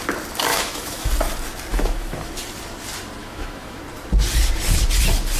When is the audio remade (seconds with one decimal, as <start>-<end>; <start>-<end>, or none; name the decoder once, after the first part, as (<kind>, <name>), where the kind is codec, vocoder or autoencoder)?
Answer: 0.5-1.1 (autoencoder, DAC-VAE); 1.7-2.3; 3.2-3.8

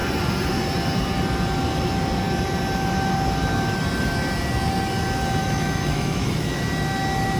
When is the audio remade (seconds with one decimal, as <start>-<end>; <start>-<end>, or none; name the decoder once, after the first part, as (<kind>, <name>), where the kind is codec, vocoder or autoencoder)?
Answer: 5.4-6.6 (autoencoder, DAC-VAE)

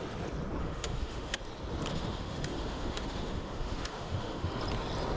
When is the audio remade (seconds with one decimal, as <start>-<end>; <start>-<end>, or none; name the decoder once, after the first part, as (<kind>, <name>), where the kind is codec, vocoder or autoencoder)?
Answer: 0.6-1.4 (autoencoder, DAC-VAE); 1.9-4.6

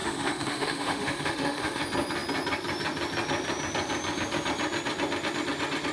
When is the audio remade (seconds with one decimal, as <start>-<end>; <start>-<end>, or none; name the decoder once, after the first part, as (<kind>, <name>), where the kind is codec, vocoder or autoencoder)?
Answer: 0.0-1.8 (autoencoder, DAC-VAE)

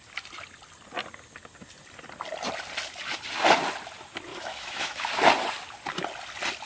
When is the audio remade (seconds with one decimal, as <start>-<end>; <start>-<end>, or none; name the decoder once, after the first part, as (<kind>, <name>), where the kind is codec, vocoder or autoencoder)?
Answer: 4.3-5.1 (autoencoder, DAC-VAE)

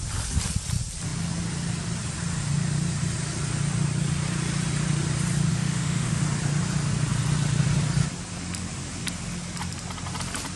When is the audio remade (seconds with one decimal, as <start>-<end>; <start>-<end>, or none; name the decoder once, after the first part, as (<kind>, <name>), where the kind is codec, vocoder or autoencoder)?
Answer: 5.5-6.2 (autoencoder, DAC-VAE)